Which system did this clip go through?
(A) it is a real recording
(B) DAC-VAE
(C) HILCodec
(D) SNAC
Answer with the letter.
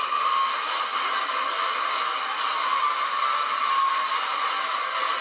A